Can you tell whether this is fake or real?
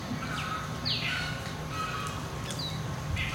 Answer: real